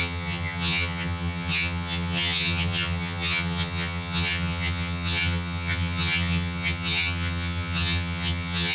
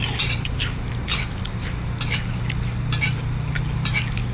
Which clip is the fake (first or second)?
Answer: first